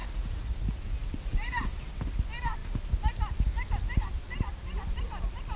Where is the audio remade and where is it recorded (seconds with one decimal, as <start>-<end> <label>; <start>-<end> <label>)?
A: 0.0-0.5 remade; 0.5-5.6 recorded